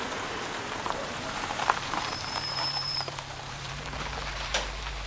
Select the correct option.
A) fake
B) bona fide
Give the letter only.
A